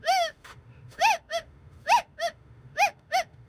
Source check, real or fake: fake